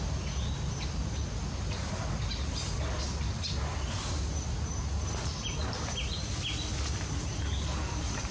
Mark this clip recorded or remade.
recorded